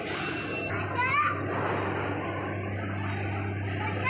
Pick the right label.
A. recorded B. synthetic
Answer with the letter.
A